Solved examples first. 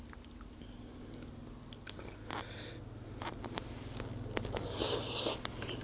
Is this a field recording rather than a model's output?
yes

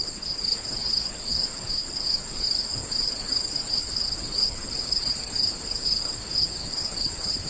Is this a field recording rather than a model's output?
no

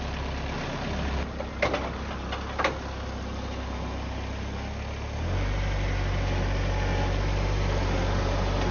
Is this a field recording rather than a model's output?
yes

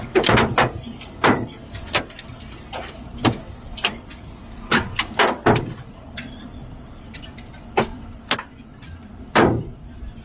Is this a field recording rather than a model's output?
no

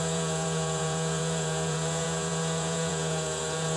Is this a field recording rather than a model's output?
no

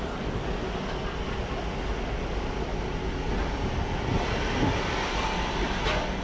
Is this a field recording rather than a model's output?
yes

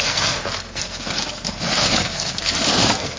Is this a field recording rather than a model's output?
no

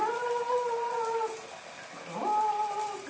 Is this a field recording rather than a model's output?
yes